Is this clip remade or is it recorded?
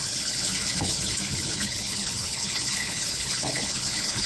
remade